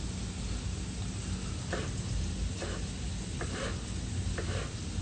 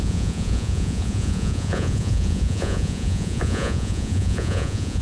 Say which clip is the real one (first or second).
first